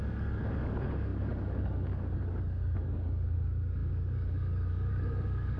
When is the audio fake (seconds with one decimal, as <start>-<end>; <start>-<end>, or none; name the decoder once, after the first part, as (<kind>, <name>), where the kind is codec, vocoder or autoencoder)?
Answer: 0.0-5.6 (codec, DAC)